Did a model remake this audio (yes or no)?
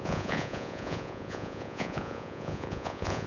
yes